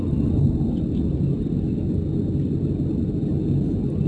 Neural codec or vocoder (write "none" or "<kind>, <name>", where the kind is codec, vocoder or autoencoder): none